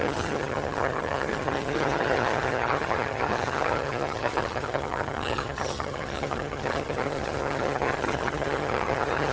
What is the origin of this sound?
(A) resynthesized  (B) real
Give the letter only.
A